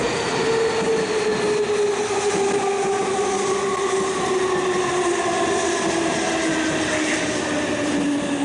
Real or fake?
real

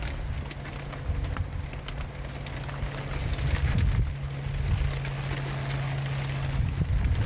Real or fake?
real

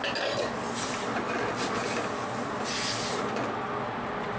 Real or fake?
real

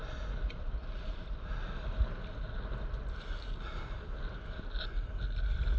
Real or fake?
real